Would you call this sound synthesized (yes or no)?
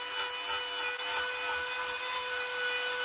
no